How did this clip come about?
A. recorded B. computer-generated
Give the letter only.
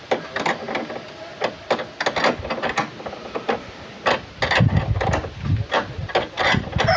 A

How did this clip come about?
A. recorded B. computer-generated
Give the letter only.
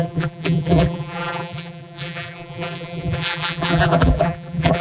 B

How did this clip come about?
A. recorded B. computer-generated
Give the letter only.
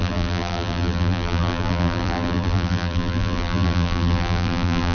B